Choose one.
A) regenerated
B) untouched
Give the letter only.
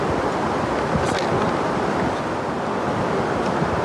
B